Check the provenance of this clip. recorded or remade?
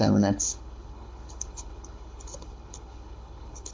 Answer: remade